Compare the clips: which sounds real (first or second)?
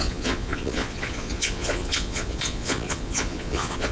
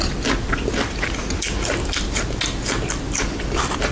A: second